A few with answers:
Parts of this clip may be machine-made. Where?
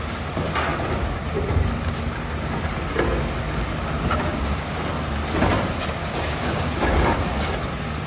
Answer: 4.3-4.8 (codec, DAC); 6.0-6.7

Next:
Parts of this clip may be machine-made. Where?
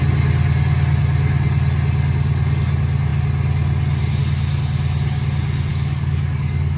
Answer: 5.7-6.8 (codec, DAC)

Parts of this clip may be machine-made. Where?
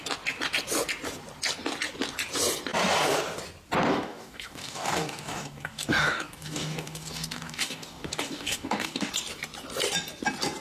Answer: 3.9-9.1 (codec, DAC)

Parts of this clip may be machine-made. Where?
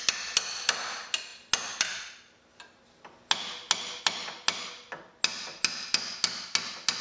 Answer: none